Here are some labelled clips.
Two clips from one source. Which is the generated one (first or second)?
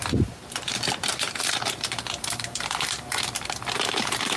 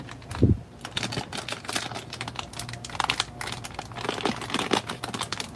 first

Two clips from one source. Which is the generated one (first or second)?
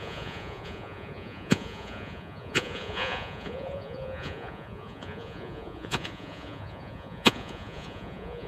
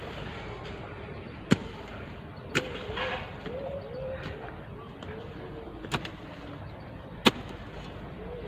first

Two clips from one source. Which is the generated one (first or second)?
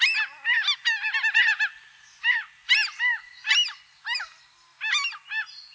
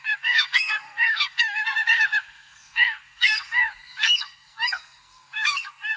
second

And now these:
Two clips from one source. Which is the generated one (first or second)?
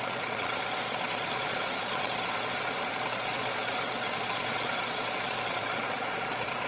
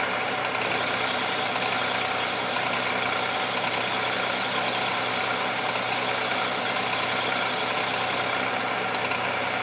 first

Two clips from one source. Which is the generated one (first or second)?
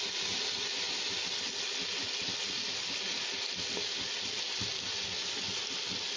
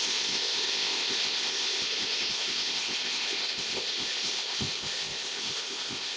second